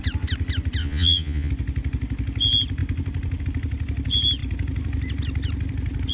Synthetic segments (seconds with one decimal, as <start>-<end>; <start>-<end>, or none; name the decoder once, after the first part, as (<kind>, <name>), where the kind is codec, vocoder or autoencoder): 0.8-1.5 (vocoder, Vocos)